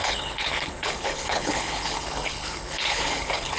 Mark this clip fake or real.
fake